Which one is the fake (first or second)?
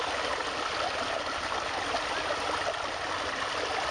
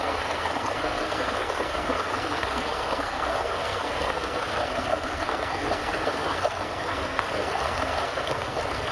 second